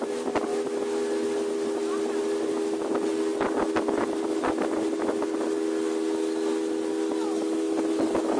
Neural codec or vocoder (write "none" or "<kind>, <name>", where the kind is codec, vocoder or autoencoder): none